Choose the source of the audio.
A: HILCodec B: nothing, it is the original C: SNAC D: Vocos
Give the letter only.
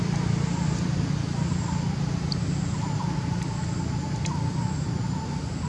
B